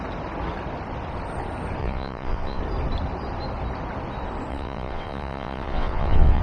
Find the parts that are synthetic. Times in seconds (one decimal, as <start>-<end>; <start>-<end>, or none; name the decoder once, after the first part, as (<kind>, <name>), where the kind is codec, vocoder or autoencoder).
1.8-2.6 (vocoder, WaveNeXt); 4.5-6.4